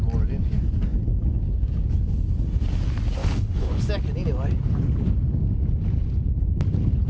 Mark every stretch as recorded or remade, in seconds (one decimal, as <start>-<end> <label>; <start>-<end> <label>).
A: 0.0-3.2 recorded; 3.2-3.9 remade; 3.9-7.1 recorded